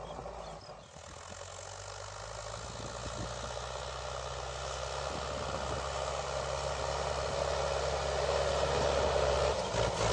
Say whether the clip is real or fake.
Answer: real